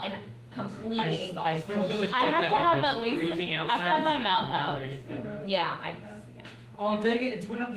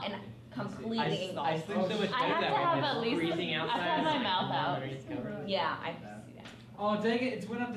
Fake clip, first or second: first